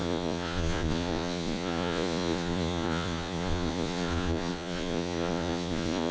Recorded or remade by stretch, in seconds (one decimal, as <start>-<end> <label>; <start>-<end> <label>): 0.0-6.1 remade